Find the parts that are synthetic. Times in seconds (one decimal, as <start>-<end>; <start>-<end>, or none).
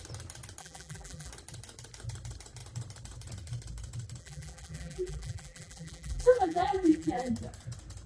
0.6-1.3; 4.2-7.3